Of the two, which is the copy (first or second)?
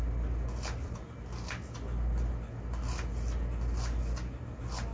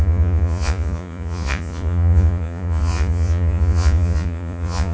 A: second